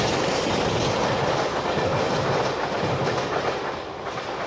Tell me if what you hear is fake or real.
real